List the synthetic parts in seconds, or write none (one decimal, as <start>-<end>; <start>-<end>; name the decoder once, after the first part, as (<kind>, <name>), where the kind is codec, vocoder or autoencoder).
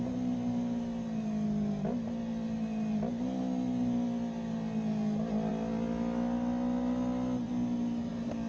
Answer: none